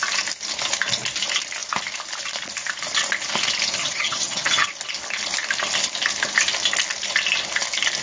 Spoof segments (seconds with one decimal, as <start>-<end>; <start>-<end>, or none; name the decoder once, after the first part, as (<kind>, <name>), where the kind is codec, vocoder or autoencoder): 3.8-4.7 (vocoder, HiFi-GAN)